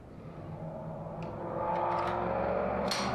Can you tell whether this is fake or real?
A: real